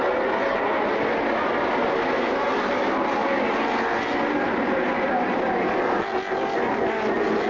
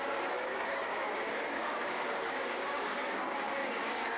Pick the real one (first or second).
first